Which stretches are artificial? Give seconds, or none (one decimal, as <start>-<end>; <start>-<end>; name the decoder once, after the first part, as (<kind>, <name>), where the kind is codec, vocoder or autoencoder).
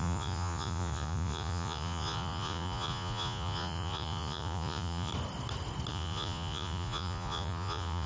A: 0.0-5.1 (vocoder, Vocos); 5.9-8.1